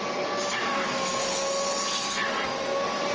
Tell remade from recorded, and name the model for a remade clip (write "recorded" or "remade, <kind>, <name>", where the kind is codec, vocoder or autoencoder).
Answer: recorded